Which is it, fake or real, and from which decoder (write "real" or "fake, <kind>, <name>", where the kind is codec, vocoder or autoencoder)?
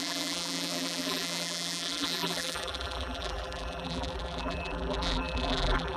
fake, vocoder, BigVGAN v2